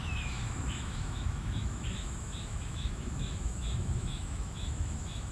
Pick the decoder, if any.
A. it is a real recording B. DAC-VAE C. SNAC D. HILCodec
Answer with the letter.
B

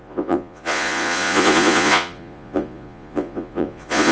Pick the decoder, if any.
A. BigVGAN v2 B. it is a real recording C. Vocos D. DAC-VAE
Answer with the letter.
C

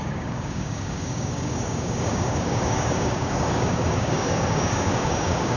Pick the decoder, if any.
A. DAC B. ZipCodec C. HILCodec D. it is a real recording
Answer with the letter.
A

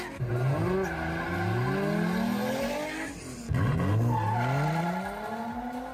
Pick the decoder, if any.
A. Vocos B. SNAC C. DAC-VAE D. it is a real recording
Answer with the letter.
D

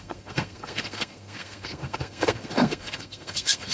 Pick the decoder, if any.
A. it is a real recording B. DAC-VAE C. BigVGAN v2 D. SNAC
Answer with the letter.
D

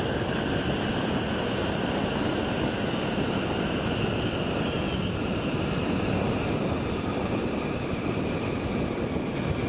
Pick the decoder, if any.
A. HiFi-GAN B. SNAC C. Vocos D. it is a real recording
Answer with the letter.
D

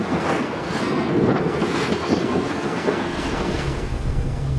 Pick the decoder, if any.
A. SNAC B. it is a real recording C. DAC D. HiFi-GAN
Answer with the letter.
A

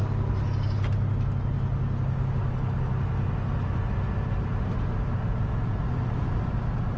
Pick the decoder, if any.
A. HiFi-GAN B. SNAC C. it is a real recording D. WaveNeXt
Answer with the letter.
C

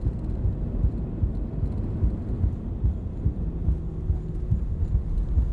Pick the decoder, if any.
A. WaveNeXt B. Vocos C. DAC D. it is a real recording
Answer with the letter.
D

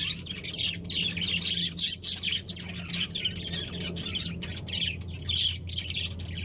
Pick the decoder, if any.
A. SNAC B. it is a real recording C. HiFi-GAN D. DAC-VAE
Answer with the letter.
B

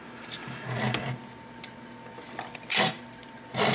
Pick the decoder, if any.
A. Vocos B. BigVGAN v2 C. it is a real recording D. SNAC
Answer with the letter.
C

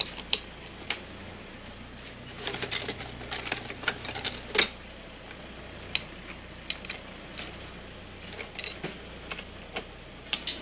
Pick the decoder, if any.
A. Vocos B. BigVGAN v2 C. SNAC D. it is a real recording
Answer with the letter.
D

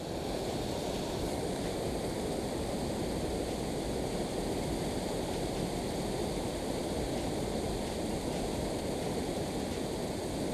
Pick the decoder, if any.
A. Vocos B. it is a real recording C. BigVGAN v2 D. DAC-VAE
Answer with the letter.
B